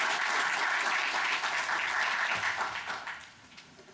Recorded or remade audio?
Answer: recorded